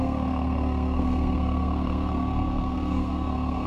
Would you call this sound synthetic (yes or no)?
yes